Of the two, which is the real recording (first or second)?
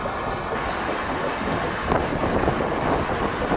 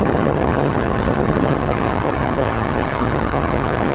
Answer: first